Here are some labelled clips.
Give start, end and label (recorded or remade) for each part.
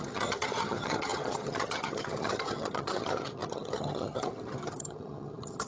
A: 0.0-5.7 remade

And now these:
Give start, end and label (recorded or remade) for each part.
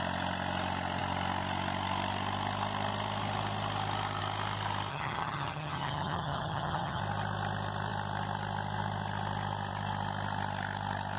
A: 0.0-4.9 recorded; 4.9-7.0 remade; 7.0-11.2 recorded